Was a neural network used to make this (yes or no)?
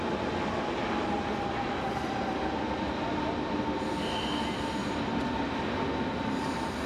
no